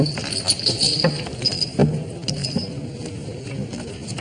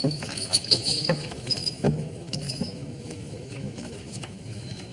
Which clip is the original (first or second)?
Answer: first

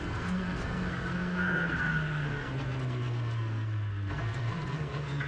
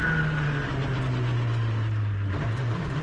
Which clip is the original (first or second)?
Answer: second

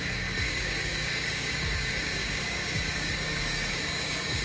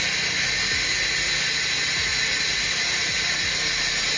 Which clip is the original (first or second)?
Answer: second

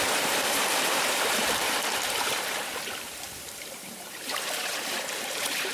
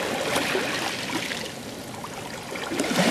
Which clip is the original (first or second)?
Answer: second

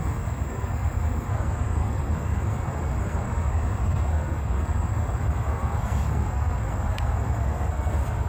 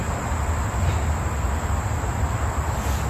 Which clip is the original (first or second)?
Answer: second